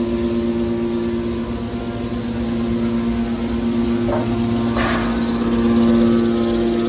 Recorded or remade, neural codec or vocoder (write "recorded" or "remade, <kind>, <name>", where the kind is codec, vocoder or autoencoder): recorded